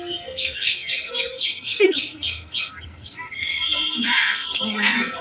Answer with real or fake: fake